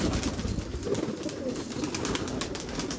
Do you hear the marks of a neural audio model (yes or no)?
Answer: no